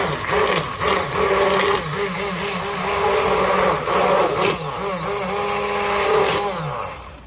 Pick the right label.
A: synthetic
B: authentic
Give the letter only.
B